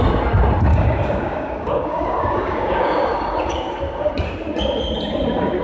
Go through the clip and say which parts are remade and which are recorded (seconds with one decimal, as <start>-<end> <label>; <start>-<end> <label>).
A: 0.0-0.7 recorded; 0.7-4.1 remade; 4.1-5.6 recorded